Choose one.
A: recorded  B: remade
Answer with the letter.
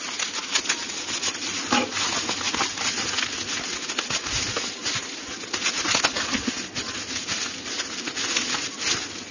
A